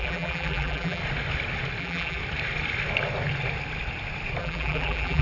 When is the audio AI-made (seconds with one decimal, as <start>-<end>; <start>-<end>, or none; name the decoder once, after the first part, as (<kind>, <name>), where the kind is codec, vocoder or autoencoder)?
0.0-1.0 (vocoder, BigVGAN v2); 1.8-2.2; 4.4-5.2